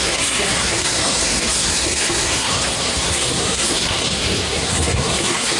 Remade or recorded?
remade